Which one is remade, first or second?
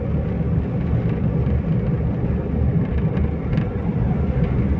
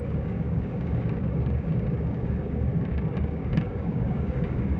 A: second